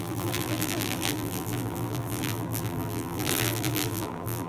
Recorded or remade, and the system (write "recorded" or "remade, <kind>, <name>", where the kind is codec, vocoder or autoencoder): remade, vocoder, BigVGAN v2